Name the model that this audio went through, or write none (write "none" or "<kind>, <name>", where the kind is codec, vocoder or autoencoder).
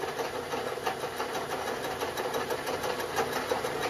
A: none